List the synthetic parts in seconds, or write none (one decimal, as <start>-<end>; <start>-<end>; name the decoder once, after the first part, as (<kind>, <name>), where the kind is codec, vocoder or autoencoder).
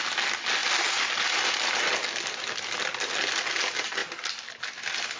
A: none